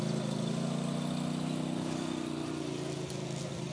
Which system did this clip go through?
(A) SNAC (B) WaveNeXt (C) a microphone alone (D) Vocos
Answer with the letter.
C